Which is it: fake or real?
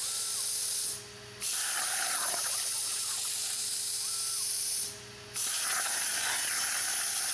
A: real